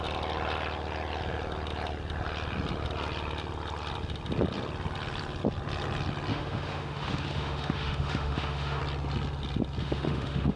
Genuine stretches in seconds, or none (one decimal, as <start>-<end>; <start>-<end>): 0.0-6.3; 8.8-9.8

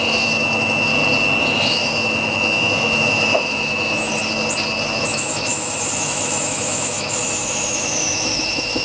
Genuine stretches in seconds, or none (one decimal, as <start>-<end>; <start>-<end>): 0.9-1.4; 4.2-5.0

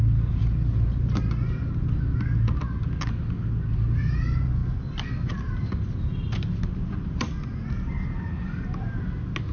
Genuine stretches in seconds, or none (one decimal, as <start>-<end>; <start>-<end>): 0.0-9.5

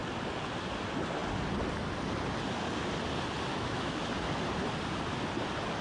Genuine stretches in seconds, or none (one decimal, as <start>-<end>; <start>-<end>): 0.0-3.5; 4.0-5.8

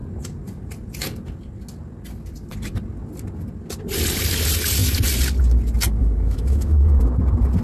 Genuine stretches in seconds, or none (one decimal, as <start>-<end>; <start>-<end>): 0.0-6.0; 7.0-7.6

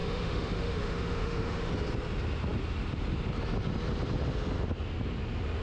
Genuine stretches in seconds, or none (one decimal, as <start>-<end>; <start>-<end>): 1.7-5.6

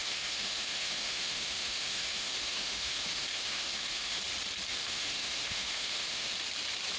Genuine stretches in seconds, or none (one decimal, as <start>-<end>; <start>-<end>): 4.2-4.7; 6.3-7.0